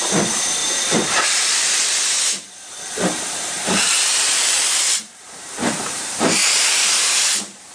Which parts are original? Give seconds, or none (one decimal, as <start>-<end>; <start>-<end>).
none